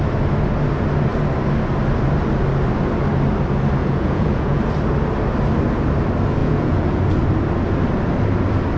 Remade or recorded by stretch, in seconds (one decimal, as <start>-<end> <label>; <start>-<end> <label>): 0.0-3.8 recorded; 3.8-4.6 remade; 4.6-6.4 recorded; 6.4-7.0 remade; 7.0-8.8 recorded